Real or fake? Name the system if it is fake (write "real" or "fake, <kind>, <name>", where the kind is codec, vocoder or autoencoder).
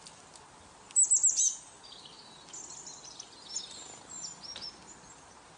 real